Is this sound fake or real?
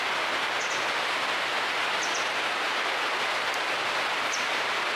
real